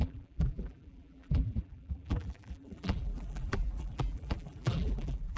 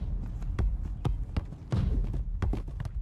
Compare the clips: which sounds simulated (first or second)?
first